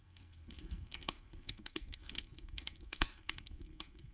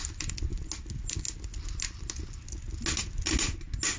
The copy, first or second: first